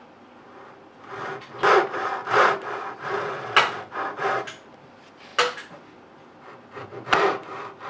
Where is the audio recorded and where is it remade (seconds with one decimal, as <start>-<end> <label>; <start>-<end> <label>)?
0.0-7.9 recorded